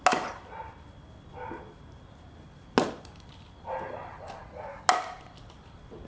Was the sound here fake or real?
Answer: real